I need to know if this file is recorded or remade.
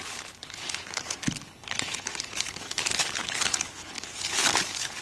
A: remade